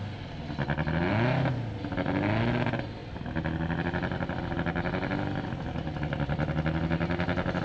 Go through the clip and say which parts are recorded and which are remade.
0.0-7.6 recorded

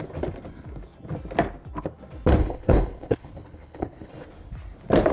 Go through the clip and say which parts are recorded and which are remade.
0.0-2.4 recorded; 2.4-4.1 remade; 4.1-5.1 recorded

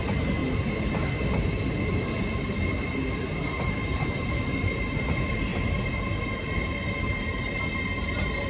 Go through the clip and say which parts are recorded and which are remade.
0.0-0.4 remade; 0.4-3.7 recorded; 3.7-5.5 remade; 5.5-7.0 recorded; 7.0-8.5 remade

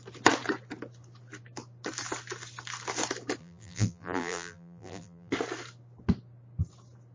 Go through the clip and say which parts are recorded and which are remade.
0.0-3.4 recorded; 3.4-5.3 remade; 5.3-7.1 recorded